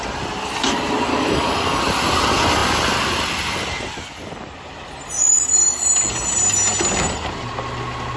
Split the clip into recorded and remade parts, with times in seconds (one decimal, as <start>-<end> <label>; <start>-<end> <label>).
0.0-1.1 recorded; 1.1-1.8 remade; 1.8-8.2 recorded